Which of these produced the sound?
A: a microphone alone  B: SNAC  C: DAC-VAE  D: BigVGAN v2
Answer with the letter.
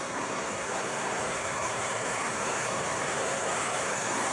B